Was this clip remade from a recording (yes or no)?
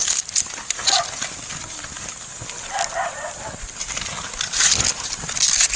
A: no